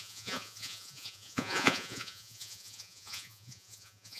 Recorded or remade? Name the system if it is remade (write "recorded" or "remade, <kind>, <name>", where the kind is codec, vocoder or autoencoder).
remade, vocoder, Vocos